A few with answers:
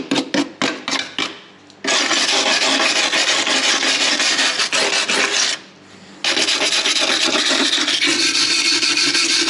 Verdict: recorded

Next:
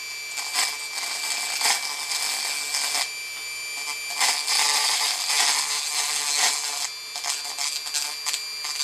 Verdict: recorded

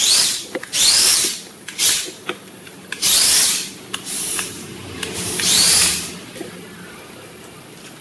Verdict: remade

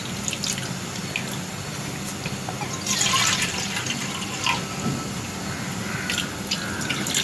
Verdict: recorded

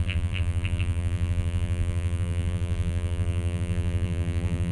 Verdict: remade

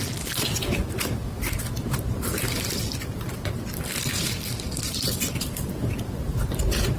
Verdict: remade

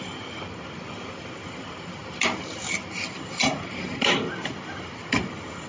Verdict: recorded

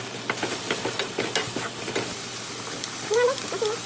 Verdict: recorded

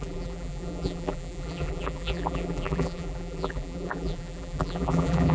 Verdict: remade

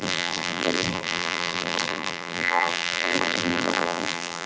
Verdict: remade